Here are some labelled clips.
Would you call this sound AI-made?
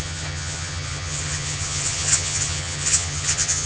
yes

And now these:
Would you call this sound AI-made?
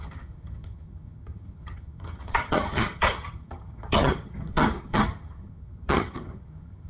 yes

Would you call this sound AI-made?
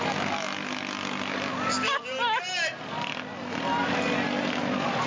no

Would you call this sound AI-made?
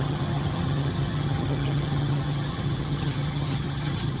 yes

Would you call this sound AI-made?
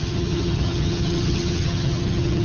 yes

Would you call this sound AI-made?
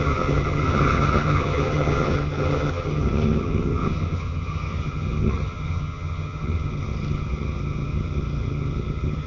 yes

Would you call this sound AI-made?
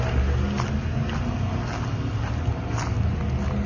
no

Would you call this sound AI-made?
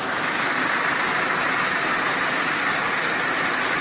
no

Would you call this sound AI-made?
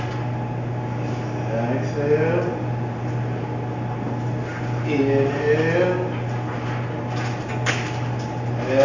no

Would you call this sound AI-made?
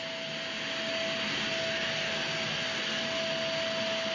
no